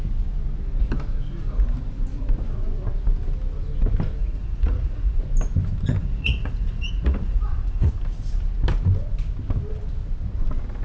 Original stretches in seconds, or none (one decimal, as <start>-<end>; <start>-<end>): 0.0-4.2; 5.2-6.0; 7.9-10.8